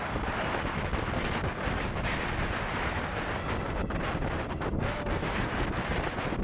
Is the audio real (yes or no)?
yes